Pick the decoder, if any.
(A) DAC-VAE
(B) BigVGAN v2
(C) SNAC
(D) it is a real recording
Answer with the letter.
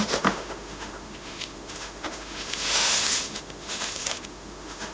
A